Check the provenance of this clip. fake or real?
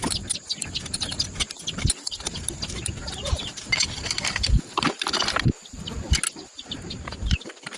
real